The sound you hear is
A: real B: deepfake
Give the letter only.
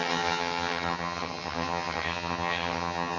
B